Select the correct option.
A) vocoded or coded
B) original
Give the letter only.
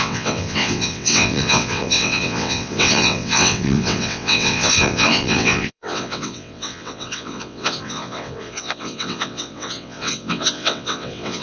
A